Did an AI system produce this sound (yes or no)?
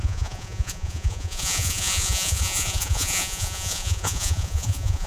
yes